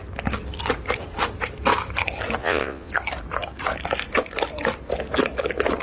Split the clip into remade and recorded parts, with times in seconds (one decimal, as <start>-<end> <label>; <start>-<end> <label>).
0.0-2.4 recorded; 2.4-2.9 remade; 2.9-5.8 recorded